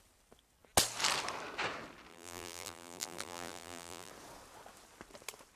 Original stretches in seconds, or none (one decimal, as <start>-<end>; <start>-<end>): 0.0-2.1; 4.1-5.6

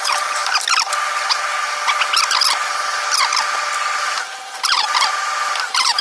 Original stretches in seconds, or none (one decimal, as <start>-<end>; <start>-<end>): 0.4-4.0

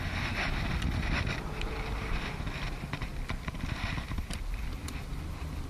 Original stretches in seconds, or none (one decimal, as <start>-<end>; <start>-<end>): 0.0-5.7

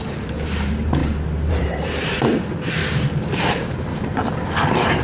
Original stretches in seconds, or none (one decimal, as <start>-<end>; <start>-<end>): 1.0-1.5; 2.8-3.4; 3.9-5.0

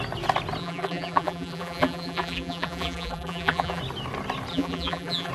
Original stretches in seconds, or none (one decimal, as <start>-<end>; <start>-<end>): 0.0-0.6; 3.8-4.5

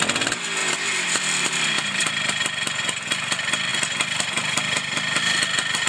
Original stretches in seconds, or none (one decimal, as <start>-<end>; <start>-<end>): 0.0-0.6; 2.4-5.9

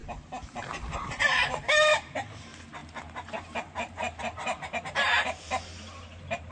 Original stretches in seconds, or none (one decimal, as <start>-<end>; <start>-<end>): 0.0-0.9

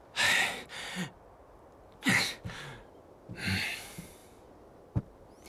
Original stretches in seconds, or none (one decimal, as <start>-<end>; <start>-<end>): 0.0-5.5